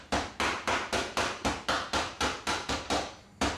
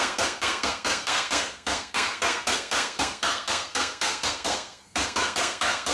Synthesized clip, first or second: second